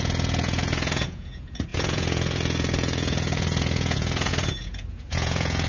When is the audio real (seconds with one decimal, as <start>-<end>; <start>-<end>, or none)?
none